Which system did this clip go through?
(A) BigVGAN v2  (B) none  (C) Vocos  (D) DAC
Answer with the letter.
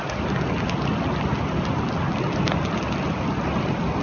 B